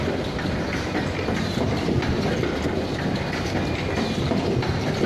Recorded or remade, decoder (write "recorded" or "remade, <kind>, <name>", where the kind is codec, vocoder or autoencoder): recorded